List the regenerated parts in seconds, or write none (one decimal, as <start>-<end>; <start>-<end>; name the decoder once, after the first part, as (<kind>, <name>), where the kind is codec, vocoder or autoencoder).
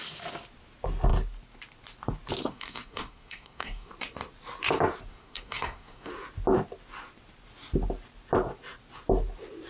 2.4-3.9 (codec, SNAC); 5.1-6.1